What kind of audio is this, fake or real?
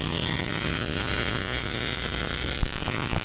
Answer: real